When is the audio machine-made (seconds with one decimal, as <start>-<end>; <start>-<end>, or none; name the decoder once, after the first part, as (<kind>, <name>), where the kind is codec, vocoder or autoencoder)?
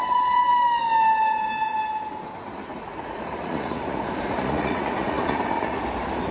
2.7-5.8 (vocoder, Vocos)